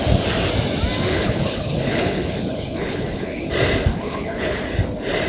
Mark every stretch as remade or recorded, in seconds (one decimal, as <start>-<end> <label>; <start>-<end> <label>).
0.0-1.1 recorded; 1.1-3.5 remade; 3.5-3.9 recorded; 3.9-4.6 remade; 4.6-5.3 recorded